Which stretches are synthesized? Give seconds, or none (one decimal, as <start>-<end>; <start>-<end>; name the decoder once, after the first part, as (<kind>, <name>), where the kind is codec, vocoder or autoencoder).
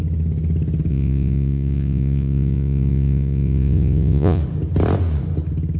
0.9-4.4 (vocoder, Vocos)